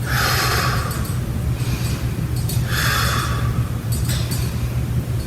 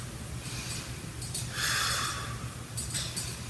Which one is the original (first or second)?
first